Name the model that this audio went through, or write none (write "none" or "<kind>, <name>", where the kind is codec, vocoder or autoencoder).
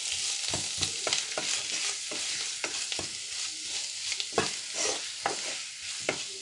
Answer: none